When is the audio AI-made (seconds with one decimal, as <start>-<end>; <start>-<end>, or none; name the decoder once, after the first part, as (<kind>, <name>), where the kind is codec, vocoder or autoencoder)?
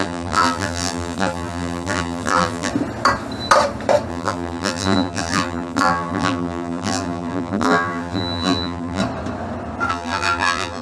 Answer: 0.0-2.7 (vocoder, BigVGAN v2); 4.1-9.0; 9.9-10.8